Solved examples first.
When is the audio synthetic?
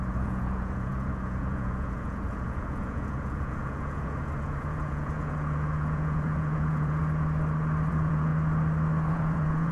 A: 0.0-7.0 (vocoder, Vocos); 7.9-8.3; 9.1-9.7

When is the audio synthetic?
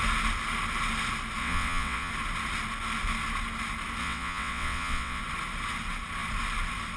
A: 1.4-2.1 (vocoder, WaveNeXt); 4.0-5.2